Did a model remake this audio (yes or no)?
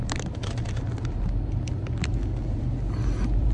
no